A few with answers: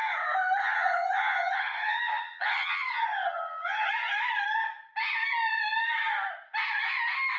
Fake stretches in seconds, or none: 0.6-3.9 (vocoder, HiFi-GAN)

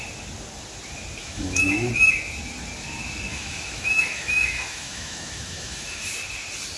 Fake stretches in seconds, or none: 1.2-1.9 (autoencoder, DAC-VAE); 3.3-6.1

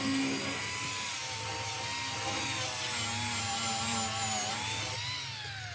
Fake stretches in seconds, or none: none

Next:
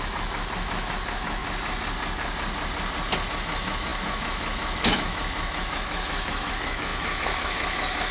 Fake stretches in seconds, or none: 0.0-1.4 (autoencoder, DAC-VAE); 3.3-8.1